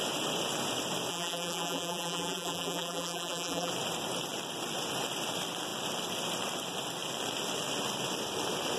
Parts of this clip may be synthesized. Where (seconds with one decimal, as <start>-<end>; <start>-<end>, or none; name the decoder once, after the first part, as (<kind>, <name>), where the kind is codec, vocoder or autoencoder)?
1.1-3.7 (vocoder, BigVGAN v2)